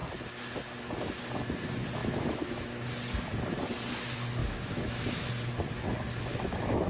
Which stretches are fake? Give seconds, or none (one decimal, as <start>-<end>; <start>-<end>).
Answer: 2.0-2.9; 4.4-5.3; 6.3-6.9